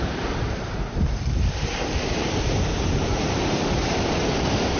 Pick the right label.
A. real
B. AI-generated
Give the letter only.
B